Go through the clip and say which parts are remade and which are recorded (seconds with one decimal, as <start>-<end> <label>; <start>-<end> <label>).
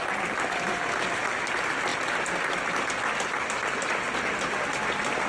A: 0.0-5.3 recorded